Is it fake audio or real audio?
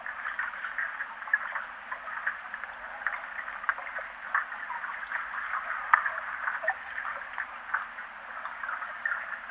real